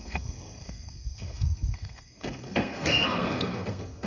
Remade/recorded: remade